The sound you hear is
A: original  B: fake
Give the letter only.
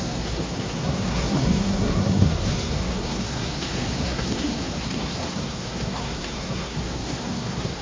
B